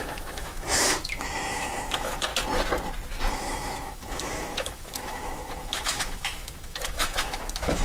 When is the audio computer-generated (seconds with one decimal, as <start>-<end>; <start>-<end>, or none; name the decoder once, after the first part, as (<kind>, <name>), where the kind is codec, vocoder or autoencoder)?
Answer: 0.0-2.3 (autoencoder, DAC-VAE); 3.3-7.8